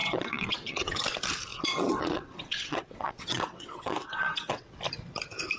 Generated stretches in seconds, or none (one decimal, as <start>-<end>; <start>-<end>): 0.0-1.0; 1.5-4.8